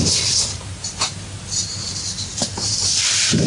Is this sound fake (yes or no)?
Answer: yes